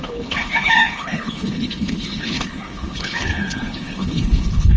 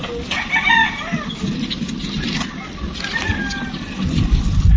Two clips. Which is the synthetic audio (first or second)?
first